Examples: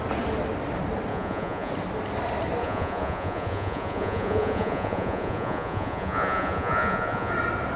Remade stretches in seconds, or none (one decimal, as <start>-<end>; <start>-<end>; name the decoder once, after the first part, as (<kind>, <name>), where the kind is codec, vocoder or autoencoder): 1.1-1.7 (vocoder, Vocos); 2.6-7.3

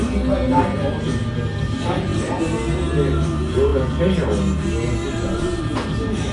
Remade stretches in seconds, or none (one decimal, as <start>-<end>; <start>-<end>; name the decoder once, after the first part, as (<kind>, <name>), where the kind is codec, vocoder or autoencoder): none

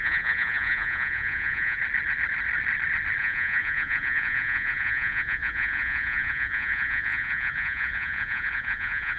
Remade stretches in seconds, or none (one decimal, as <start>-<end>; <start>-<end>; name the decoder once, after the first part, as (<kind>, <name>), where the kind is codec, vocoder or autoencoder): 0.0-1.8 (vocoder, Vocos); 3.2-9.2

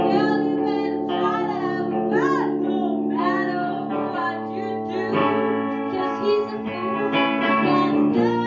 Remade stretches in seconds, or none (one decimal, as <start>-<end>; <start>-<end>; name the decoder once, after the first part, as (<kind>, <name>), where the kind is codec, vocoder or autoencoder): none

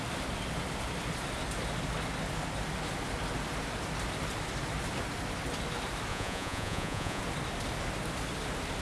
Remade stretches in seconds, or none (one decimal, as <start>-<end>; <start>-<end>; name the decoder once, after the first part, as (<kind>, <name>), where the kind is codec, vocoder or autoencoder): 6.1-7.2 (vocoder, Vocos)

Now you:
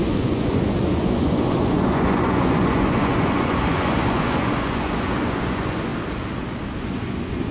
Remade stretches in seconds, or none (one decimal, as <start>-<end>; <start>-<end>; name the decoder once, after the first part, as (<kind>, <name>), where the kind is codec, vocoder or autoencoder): 0.0-5.9 (vocoder, Vocos); 6.8-7.5

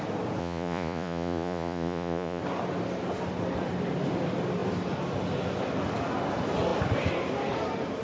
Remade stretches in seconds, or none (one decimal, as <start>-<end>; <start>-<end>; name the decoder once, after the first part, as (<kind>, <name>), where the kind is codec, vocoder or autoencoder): 0.4-2.4 (vocoder, Vocos)

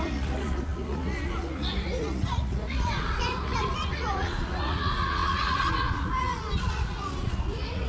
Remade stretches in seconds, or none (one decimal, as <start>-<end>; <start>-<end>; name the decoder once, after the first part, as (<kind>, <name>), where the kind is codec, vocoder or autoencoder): 0.0-7.9 (vocoder, Vocos)